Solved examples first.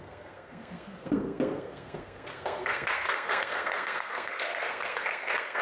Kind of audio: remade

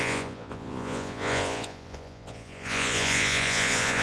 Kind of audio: remade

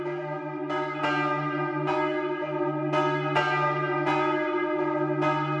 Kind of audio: recorded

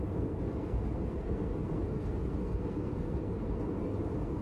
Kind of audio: remade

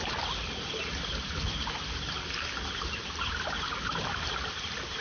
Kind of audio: recorded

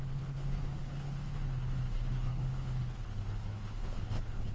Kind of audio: remade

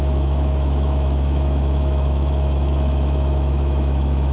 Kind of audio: remade